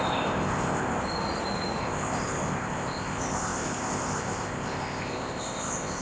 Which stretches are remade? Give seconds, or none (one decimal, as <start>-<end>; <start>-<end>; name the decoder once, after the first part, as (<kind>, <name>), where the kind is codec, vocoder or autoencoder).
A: 0.0-1.0 (codec, ZipCodec); 1.8-6.0